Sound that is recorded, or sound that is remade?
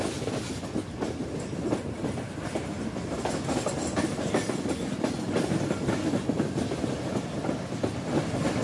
recorded